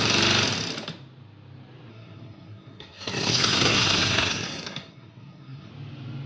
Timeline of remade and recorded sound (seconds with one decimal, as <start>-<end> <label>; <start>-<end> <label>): 0.0-1.9 recorded; 1.9-5.7 remade; 5.7-6.3 recorded